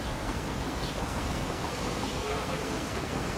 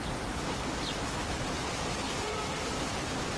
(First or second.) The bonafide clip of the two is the second